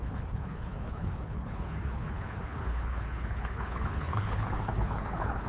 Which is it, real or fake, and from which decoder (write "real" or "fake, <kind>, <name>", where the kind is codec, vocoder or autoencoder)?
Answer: fake, codec, HILCodec